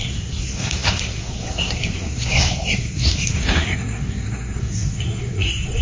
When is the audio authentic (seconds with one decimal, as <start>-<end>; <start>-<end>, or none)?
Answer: none